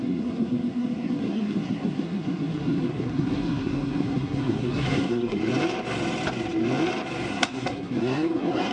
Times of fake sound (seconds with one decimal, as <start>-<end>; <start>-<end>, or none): 0.0-5.4; 7.3-8.7